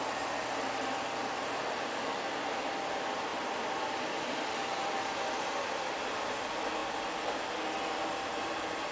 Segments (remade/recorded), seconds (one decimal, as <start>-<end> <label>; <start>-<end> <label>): 0.0-3.3 recorded; 3.3-5.0 remade; 5.0-8.9 recorded